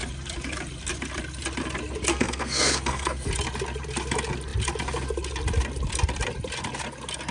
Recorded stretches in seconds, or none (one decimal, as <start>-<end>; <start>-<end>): 0.0-2.1; 3.3-7.3